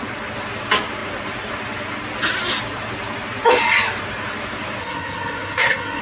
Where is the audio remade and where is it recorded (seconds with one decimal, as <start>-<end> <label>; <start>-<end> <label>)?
0.0-4.8 recorded; 4.8-6.0 remade